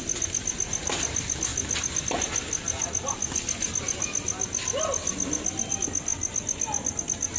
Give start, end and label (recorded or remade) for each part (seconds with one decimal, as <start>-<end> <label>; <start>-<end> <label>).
0.0-7.4 recorded